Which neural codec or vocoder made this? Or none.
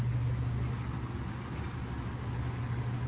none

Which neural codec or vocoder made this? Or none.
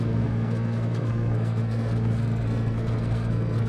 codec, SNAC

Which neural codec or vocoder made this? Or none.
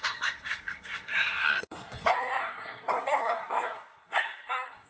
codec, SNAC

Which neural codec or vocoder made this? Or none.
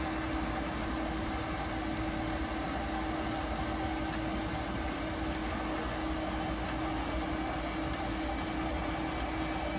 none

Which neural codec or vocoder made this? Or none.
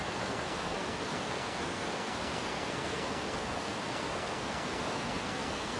codec, SNAC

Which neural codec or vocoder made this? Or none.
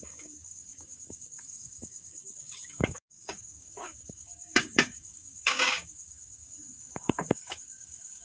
codec, DAC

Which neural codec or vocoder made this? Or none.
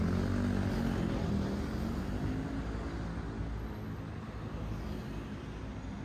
none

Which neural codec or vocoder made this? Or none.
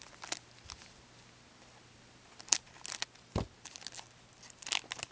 none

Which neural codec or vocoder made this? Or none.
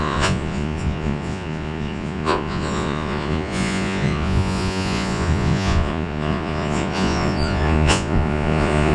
vocoder, Vocos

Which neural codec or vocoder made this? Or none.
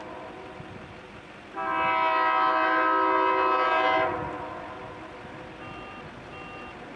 none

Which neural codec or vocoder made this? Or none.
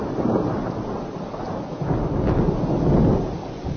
none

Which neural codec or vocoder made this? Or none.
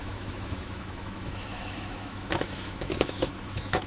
autoencoder, DAC-VAE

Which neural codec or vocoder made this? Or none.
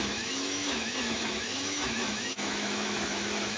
autoencoder, DAC-VAE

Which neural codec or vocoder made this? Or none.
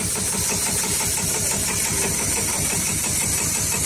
none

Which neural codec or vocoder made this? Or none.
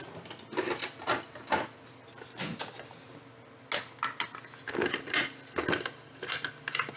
none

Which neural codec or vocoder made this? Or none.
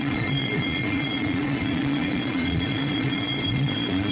vocoder, Vocos